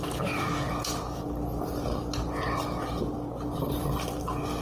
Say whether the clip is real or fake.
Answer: real